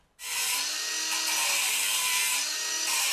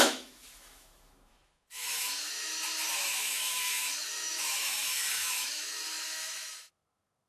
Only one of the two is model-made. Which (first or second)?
second